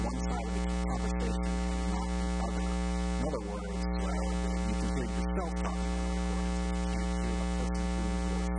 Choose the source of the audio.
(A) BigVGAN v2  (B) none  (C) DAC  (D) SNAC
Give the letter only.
B